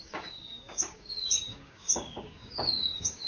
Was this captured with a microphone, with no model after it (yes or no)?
no